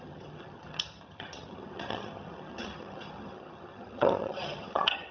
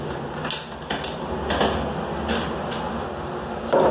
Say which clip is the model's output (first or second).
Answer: first